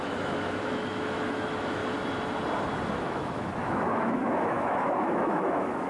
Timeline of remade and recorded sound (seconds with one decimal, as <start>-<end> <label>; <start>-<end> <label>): 0.0-1.8 remade; 1.8-2.9 recorded; 2.9-5.9 remade